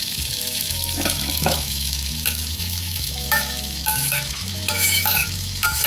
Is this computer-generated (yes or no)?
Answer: yes